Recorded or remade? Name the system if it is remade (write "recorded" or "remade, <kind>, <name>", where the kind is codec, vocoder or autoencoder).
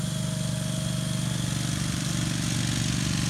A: recorded